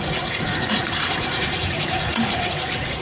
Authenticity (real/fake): fake